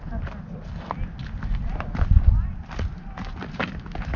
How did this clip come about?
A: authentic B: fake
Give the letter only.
A